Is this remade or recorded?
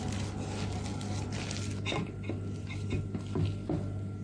recorded